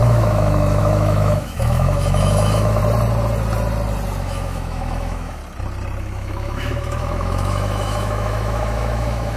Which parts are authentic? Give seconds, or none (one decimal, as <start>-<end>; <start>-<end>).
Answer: 2.8-4.2; 5.4-6.0